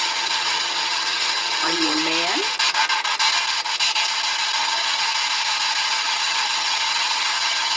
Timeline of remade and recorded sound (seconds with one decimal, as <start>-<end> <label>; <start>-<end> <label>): 0.0-2.0 remade; 2.0-4.6 recorded; 4.6-5.1 remade; 5.1-5.9 recorded; 5.9-7.8 remade